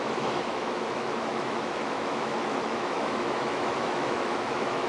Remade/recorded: remade